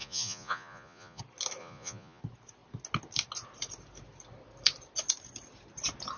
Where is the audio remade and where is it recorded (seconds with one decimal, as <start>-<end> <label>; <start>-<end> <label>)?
0.0-1.2 remade; 1.2-1.6 recorded; 1.6-2.2 remade; 2.2-6.2 recorded